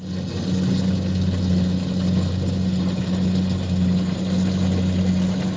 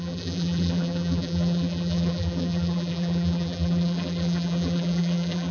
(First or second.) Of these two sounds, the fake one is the second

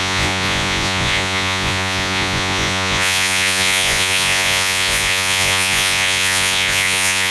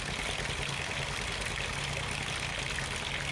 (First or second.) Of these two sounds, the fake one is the first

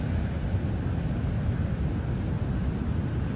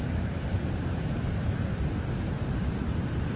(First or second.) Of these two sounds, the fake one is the second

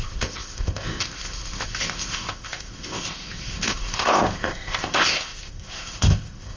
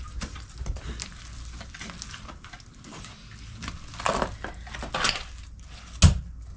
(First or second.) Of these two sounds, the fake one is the first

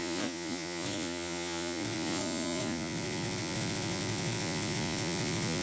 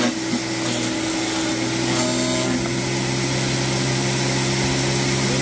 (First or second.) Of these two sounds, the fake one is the first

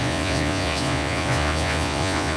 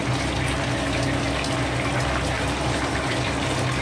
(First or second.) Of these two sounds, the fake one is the first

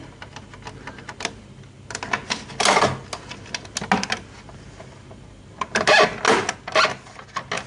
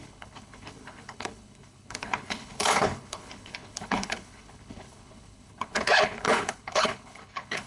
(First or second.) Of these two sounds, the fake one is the second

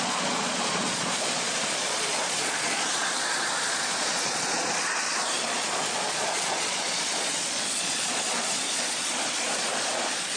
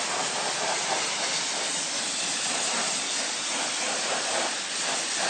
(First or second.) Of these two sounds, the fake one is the first